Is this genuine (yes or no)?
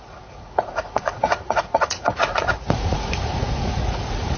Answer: no